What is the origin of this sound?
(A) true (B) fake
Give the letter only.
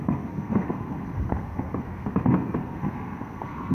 B